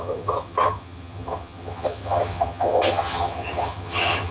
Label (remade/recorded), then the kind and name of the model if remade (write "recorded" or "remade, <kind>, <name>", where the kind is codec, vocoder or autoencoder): remade, vocoder, HiFi-GAN